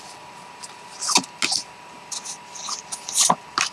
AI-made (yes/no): no